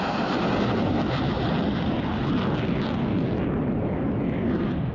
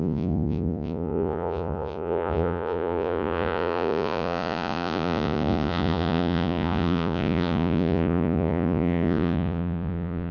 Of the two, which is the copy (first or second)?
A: second